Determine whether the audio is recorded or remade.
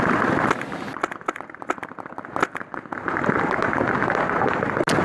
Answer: recorded